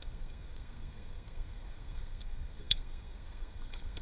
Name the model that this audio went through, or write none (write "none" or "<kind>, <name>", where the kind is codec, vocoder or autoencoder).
codec, SNAC